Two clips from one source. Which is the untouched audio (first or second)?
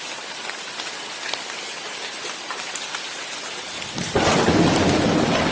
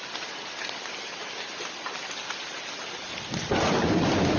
first